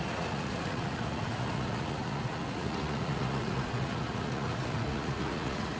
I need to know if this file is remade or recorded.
remade